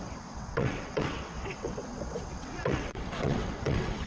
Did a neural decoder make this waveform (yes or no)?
yes